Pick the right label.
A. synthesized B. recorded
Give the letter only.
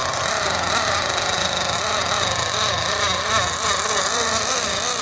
B